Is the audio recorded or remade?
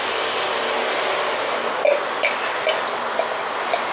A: recorded